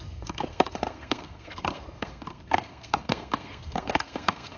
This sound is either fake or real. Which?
fake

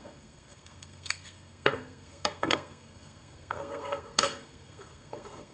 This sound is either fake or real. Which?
fake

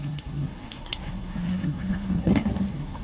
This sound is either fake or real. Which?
fake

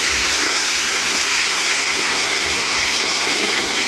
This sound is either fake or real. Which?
fake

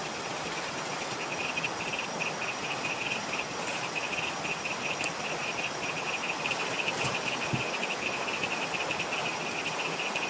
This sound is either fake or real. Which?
real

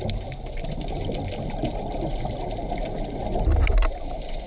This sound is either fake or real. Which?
real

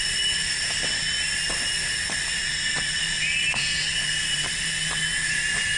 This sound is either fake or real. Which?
real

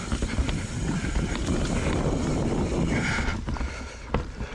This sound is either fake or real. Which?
real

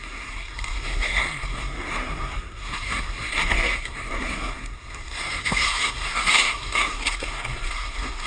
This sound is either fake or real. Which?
fake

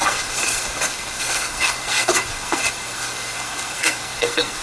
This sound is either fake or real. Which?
fake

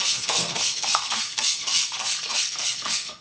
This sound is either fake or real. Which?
fake